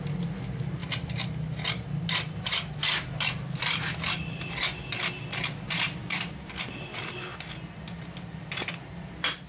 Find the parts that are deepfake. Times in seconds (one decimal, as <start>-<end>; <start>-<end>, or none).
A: 6.0-6.5